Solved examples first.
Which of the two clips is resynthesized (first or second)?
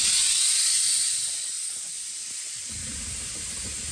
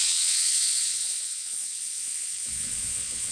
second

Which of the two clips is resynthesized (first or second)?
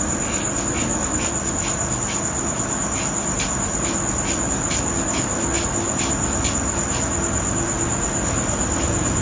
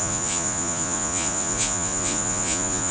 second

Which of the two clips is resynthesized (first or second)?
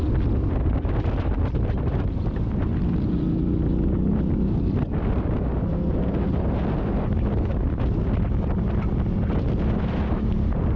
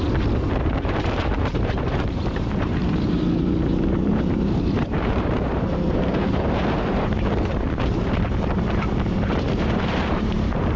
second